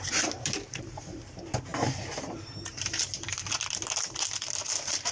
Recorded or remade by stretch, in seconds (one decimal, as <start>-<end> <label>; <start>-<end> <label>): 0.0-5.1 remade